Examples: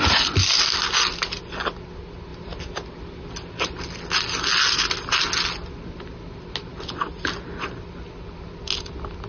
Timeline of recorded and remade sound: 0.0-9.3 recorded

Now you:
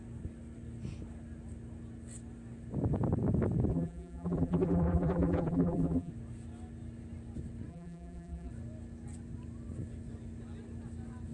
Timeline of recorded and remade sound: 0.0-3.7 recorded; 3.7-6.1 remade; 6.1-7.7 recorded; 7.7-8.5 remade; 8.5-11.3 recorded